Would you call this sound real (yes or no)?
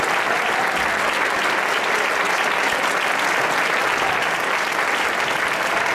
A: yes